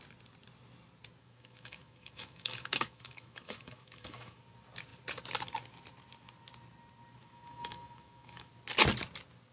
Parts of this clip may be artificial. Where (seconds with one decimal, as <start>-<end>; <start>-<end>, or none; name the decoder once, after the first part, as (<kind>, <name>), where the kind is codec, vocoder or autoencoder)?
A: 1.2-4.4 (autoencoder, DAC-VAE); 7.2-8.5